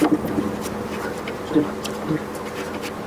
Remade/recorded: recorded